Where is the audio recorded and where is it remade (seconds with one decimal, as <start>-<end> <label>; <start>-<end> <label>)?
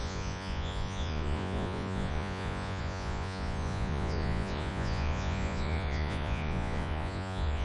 0.0-7.6 remade